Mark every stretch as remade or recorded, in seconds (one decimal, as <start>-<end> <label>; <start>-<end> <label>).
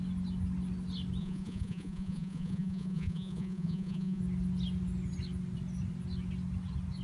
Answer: 0.0-1.2 recorded; 1.2-4.2 remade; 4.2-7.0 recorded